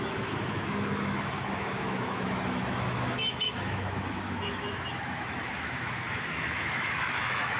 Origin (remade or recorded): remade